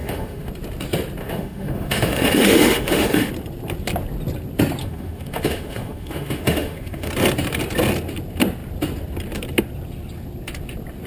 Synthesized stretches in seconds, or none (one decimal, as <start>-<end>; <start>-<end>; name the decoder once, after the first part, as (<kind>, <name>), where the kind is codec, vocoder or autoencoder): 0.0-0.5 (autoencoder, DAC-VAE); 1.2-3.3; 4.8-7.1